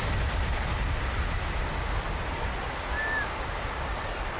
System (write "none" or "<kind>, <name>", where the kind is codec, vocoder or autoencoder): none